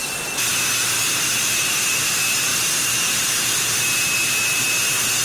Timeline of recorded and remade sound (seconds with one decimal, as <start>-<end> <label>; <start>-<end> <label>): 0.0-2.5 recorded; 2.5-4.4 remade; 4.4-5.2 recorded